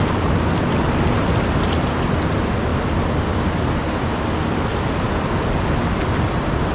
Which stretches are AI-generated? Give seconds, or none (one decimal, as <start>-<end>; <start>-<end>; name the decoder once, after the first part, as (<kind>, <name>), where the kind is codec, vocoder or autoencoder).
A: none